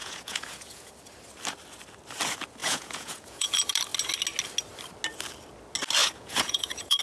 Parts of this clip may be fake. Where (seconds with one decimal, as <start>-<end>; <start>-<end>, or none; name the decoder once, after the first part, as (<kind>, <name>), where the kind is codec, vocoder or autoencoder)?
0.0-0.9 (vocoder, Vocos); 2.6-3.5; 6.0-7.0

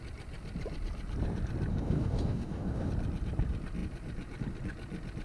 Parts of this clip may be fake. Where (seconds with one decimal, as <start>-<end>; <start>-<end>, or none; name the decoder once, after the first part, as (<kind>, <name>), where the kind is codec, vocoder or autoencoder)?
1.7-2.9 (codec, DAC)

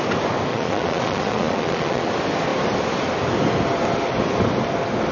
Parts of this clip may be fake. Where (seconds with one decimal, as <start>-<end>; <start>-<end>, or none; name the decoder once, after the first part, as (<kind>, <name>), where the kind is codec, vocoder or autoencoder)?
0.5-2.1 (vocoder, Vocos)

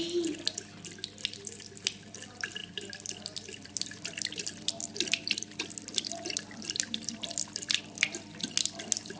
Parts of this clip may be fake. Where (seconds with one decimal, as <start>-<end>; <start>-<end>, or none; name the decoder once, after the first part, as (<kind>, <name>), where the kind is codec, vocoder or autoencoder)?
2.6-7.8 (vocoder, BigVGAN v2)